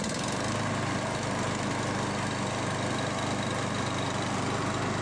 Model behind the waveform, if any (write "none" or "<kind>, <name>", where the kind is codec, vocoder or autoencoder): none